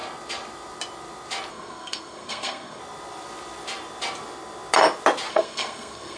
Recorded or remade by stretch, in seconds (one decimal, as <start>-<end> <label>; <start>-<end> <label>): 0.0-1.5 recorded; 1.5-2.8 remade; 2.8-5.3 recorded; 5.3-6.2 remade